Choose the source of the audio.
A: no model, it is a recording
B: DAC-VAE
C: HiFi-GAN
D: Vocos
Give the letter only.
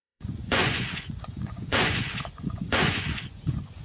D